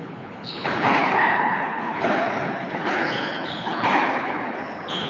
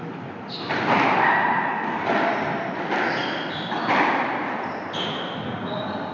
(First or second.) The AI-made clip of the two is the first